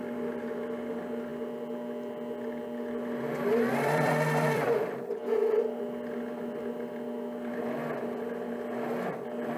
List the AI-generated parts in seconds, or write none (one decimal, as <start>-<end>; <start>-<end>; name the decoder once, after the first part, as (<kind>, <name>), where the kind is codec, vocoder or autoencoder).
0.0-1.3 (vocoder, BigVGAN v2); 3.7-9.6